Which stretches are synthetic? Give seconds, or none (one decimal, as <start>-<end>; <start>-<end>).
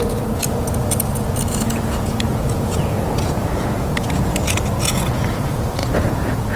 0.0-6.6